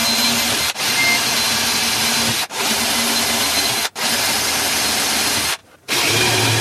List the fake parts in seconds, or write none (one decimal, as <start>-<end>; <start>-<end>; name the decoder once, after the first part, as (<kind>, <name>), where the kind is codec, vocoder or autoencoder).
5.6-6.6 (vocoder, BigVGAN v2)